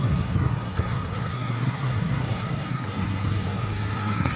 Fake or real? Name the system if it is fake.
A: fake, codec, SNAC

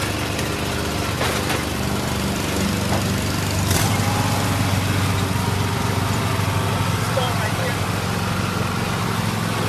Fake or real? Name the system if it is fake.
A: real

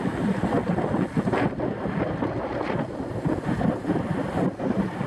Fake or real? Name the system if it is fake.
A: real